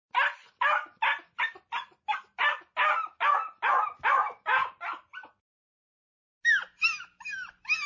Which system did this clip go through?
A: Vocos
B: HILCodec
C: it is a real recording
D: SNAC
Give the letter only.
C